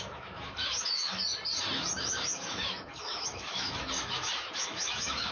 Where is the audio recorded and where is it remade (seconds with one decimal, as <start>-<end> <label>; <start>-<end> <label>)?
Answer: 0.0-1.2 remade; 1.2-2.0 recorded; 2.0-5.3 remade